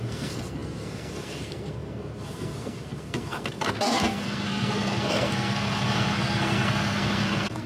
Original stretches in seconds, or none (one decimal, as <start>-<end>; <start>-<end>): none